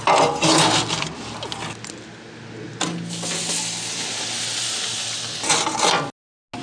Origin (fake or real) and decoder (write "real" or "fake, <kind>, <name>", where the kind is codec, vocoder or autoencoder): real